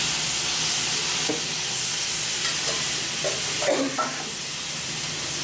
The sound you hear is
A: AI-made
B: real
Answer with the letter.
B